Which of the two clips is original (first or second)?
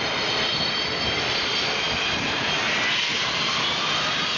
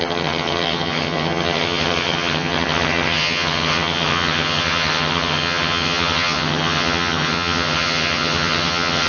first